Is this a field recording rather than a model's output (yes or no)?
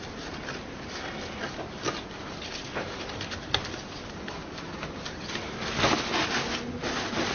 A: yes